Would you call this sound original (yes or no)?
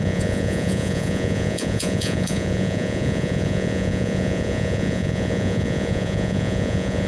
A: no